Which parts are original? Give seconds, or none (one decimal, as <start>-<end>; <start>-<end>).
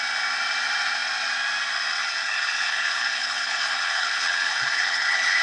0.0-2.0